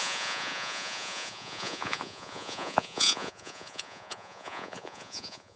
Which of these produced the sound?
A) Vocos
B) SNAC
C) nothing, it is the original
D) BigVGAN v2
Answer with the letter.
A